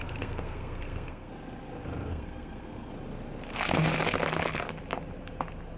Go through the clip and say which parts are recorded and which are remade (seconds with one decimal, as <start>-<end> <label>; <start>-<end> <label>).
0.0-1.3 remade; 1.3-2.1 recorded; 2.1-2.9 remade; 2.9-5.8 recorded